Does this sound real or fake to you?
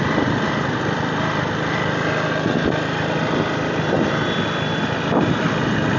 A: real